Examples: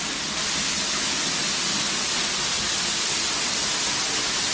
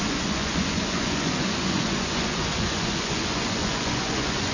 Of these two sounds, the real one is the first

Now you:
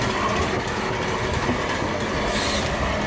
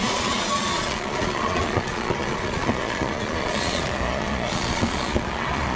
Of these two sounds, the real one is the first